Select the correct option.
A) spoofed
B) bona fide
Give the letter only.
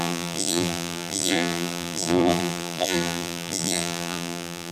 A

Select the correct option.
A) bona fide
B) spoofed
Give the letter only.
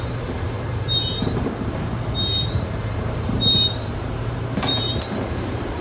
B